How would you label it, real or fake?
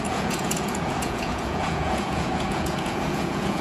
fake